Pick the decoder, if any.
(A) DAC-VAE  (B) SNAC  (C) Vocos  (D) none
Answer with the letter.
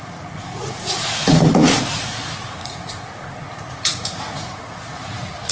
C